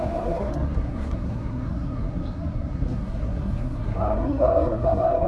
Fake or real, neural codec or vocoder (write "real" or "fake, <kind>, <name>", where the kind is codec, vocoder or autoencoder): fake, codec, SNAC